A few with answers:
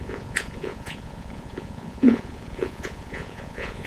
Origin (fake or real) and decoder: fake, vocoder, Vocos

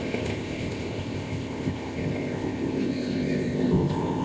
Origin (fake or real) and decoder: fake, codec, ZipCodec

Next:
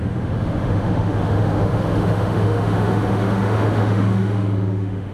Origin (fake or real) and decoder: fake, autoencoder, DAC-VAE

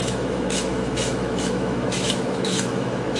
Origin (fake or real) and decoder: fake, autoencoder, DAC-VAE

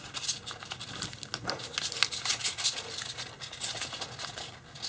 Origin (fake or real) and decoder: real